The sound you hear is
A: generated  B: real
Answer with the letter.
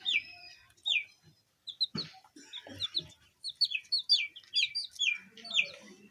B